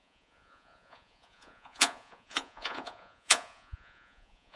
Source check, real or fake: fake